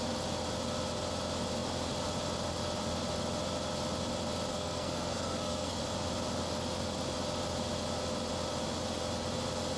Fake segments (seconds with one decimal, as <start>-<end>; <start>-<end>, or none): 4.5-5.8